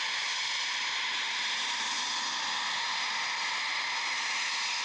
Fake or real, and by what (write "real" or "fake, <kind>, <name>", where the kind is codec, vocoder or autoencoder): real